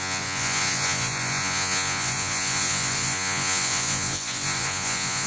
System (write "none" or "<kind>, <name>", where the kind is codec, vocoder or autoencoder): vocoder, Vocos